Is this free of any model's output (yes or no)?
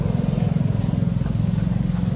yes